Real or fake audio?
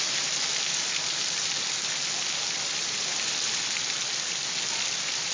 real